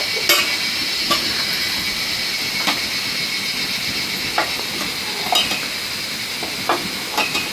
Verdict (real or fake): real